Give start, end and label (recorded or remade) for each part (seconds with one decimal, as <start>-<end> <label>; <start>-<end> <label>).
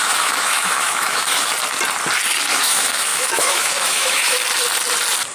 0.0-1.5 remade; 1.5-2.5 recorded; 2.5-4.4 remade; 4.4-5.3 recorded